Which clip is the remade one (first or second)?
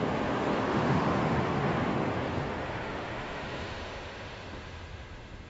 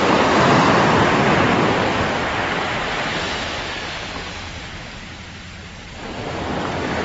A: first